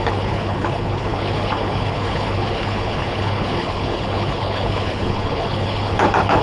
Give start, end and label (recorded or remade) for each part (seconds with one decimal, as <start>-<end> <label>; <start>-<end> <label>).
0.0-6.4 remade

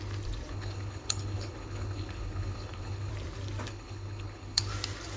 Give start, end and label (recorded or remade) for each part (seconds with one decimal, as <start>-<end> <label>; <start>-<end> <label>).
0.0-0.5 recorded; 0.5-3.1 remade; 3.1-3.7 recorded; 3.7-4.6 remade; 4.6-5.2 recorded

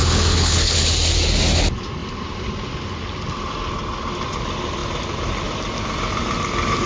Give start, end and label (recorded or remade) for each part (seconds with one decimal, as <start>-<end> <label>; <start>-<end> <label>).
0.0-0.9 remade; 0.9-6.9 recorded

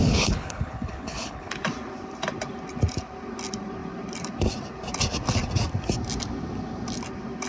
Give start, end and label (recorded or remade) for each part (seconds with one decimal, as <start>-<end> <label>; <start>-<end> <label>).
0.0-1.5 remade; 1.5-7.5 recorded

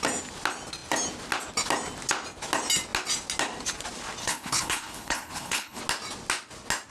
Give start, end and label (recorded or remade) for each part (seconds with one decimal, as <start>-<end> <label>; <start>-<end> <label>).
0.0-4.2 recorded; 4.2-5.8 remade; 5.8-6.9 recorded

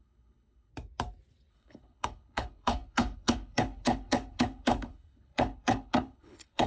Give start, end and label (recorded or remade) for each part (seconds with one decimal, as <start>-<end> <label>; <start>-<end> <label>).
0.0-0.7 remade; 0.7-1.5 recorded; 1.5-6.7 remade